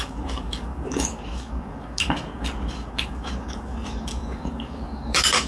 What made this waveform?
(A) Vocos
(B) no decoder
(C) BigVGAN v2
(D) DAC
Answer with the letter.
D